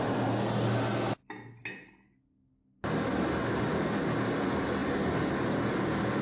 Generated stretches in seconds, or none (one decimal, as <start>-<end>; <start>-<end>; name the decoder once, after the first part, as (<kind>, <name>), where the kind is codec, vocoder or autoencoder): none